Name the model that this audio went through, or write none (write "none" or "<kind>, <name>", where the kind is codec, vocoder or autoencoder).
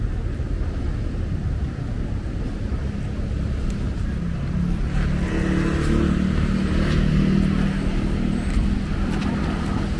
none